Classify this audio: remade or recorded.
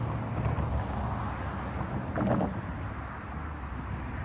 recorded